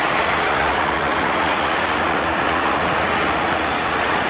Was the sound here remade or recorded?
remade